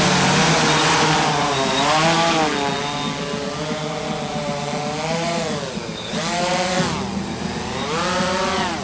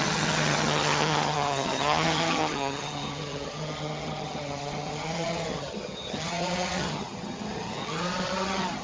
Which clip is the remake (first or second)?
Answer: second